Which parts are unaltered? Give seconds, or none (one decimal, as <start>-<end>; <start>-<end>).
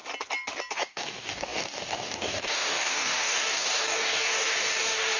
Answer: 0.0-0.7